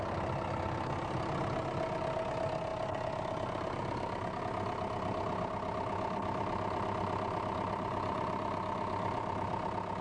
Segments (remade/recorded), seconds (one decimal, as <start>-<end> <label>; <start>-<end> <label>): 0.0-10.0 recorded